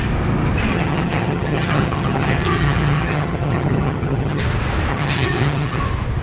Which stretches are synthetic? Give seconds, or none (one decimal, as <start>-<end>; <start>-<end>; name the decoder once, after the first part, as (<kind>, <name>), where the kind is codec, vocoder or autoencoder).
0.7-4.4 (vocoder, HiFi-GAN); 4.9-5.8